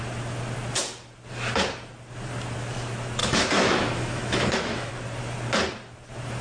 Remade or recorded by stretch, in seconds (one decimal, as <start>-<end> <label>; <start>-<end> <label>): 0.0-3.2 recorded; 3.2-4.9 remade; 4.9-6.4 recorded